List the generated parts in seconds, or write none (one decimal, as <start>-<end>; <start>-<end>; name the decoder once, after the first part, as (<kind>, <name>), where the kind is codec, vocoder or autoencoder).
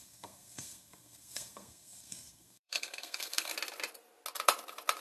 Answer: 0.0-3.5 (codec, SNAC)